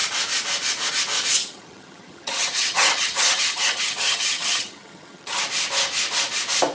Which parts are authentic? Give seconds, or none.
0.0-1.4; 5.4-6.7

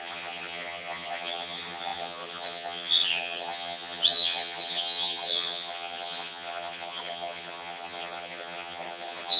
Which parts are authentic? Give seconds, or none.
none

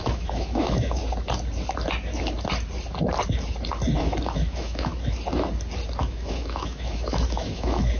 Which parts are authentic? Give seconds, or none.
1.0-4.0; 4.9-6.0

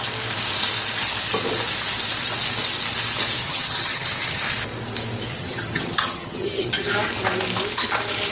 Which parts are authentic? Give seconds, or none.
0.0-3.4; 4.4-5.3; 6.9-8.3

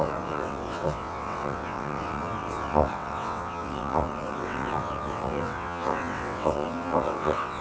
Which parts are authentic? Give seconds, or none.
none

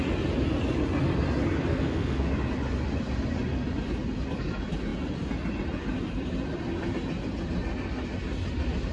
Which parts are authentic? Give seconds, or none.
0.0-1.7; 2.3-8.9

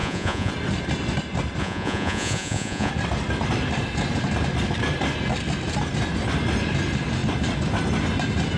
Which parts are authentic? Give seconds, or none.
0.5-1.6; 2.9-8.6

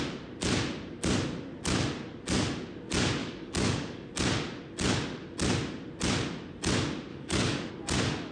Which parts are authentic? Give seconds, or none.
0.0-3.2; 4.1-7.1; 7.7-8.3